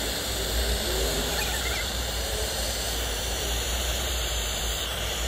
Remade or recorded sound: remade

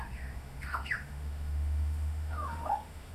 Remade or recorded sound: remade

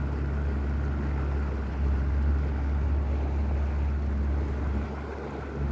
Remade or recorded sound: recorded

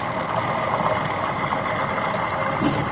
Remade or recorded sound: recorded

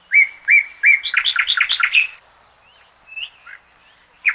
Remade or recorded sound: recorded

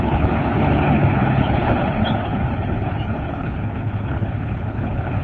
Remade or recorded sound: remade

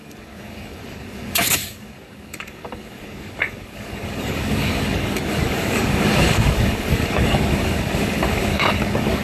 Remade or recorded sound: remade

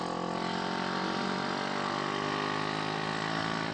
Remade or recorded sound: recorded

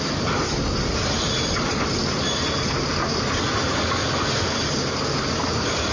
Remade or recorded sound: recorded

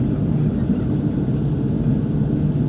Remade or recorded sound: recorded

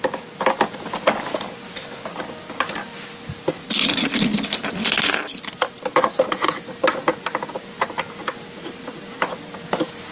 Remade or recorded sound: recorded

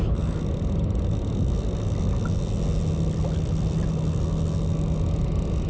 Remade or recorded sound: recorded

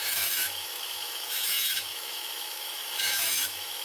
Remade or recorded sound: remade